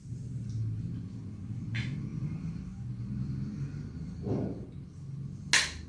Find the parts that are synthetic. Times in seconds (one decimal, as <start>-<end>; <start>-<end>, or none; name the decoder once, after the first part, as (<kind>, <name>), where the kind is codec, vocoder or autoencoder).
none